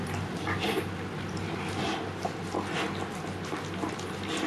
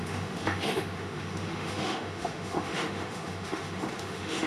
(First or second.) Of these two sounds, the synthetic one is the second